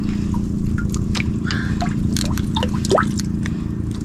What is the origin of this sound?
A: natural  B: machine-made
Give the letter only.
A